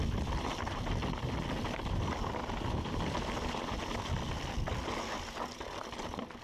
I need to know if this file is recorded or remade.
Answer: remade